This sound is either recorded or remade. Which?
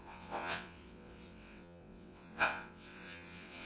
remade